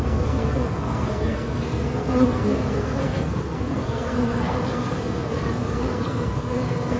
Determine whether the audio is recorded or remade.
remade